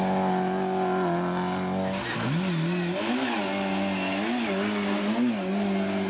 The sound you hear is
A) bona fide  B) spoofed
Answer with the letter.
A